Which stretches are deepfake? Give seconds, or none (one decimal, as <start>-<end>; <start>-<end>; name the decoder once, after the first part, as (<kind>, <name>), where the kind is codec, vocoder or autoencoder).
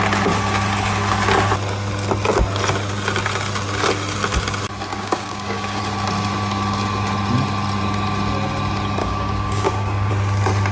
4.9-5.8 (codec, DAC); 9.0-10.1